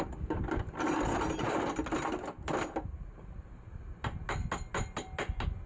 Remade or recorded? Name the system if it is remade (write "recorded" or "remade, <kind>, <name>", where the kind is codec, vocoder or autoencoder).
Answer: recorded